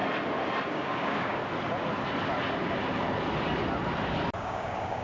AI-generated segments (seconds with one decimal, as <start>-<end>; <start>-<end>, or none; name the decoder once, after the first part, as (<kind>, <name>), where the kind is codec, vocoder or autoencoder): 0.7-1.4 (codec, DAC); 4.4-5.0